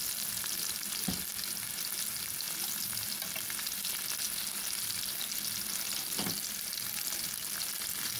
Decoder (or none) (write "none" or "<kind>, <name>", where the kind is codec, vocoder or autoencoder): none